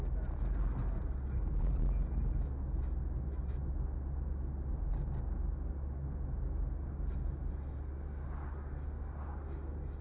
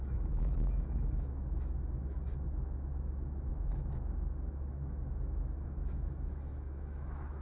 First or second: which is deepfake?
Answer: second